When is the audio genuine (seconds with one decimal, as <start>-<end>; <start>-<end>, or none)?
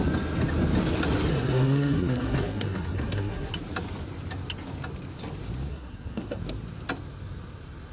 0.0-1.3; 3.5-5.7; 6.4-7.9